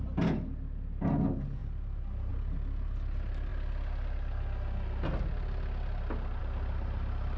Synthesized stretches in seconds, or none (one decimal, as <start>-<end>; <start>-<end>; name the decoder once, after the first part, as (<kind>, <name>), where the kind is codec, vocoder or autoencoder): none